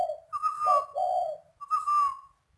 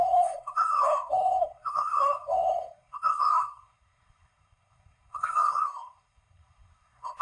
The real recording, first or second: first